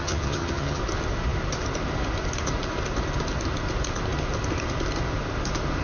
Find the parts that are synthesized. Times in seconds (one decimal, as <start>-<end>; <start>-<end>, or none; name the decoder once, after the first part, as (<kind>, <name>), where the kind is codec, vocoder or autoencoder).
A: 0.0-0.8 (vocoder, HiFi-GAN)